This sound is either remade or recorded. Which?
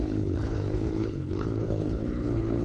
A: remade